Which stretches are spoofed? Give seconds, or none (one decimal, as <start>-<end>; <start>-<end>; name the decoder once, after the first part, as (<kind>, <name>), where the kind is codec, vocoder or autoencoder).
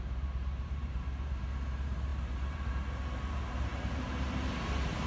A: 0.0-5.1 (vocoder, BigVGAN v2)